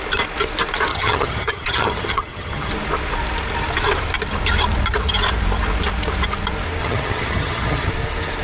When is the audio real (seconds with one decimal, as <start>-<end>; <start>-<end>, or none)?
0.0-0.9; 2.7-6.8; 7.9-8.4